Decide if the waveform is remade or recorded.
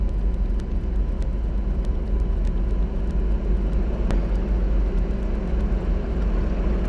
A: recorded